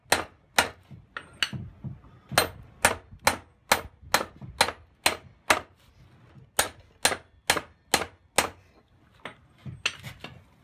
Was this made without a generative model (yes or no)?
yes